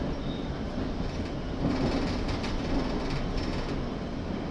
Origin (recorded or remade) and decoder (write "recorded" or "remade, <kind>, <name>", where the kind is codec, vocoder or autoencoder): recorded